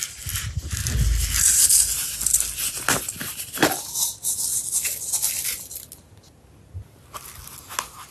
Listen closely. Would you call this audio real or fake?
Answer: real